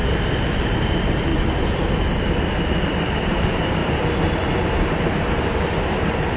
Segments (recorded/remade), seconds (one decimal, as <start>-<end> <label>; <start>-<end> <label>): 0.0-0.6 recorded; 0.6-1.3 remade; 1.3-2.8 recorded; 2.8-3.8 remade; 3.8-5.0 recorded; 5.0-6.4 remade